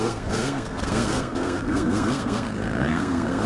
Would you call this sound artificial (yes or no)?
yes